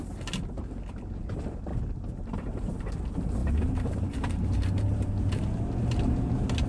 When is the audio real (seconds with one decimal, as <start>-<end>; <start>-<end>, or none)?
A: 0.0-1.7; 2.9-3.4; 5.4-6.7